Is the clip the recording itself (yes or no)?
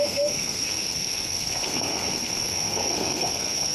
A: no